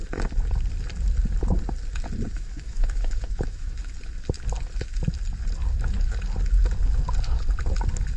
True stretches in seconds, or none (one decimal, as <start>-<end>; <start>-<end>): 0.0-2.3; 3.8-8.2